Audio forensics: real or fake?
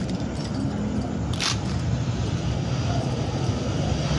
real